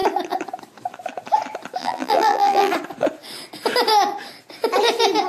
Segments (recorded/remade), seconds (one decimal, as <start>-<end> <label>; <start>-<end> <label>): 0.0-1.8 recorded; 1.8-2.7 remade; 2.7-5.3 recorded